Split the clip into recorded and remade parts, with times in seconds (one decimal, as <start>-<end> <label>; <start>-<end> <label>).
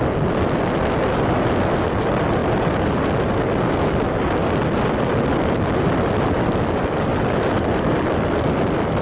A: 0.0-2.4 remade; 2.4-6.2 recorded; 6.2-9.0 remade